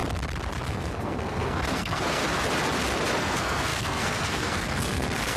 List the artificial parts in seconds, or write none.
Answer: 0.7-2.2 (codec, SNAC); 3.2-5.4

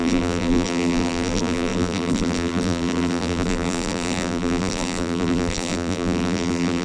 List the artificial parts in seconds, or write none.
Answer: 0.0-6.8 (vocoder, BigVGAN v2)

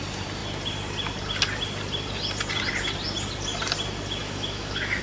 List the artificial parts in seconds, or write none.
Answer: 4.2-5.0 (autoencoder, DAC-VAE)

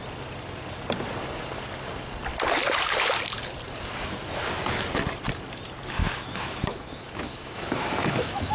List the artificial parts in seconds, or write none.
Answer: 6.0-8.5 (autoencoder, DAC-VAE)

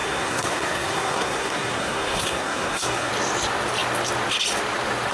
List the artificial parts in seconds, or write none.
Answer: 0.0-3.1 (codec, SNAC)

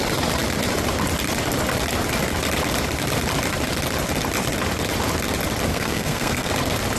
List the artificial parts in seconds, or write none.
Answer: 5.7-6.5 (codec, SNAC)

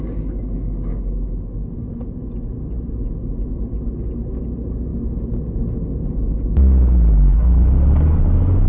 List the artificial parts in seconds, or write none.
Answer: none

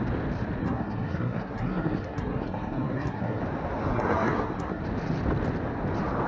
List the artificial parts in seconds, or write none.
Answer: 0.6-3.4 (codec, SNAC); 3.9-4.8